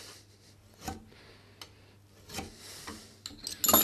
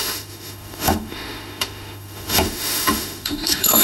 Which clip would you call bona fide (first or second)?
first